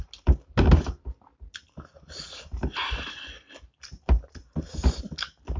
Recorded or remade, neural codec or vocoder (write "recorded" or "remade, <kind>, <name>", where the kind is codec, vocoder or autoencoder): recorded